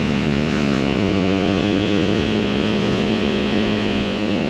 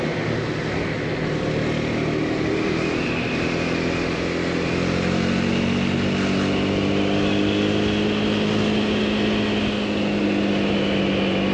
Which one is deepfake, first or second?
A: first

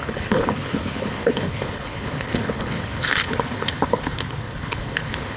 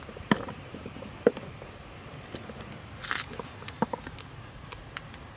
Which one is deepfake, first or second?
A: first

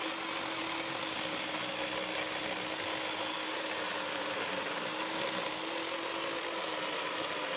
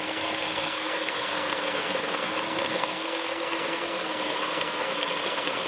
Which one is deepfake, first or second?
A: second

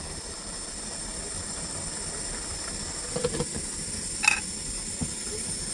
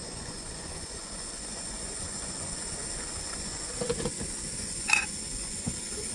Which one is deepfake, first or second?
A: second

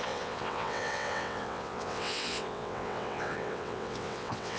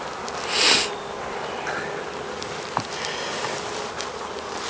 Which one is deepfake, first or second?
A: first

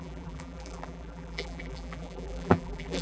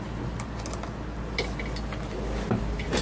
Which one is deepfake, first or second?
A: first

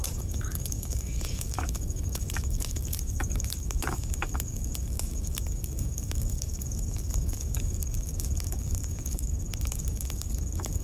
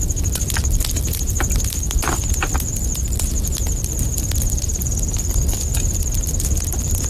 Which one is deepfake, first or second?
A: first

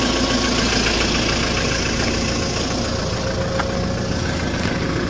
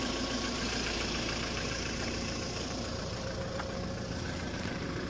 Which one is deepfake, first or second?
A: second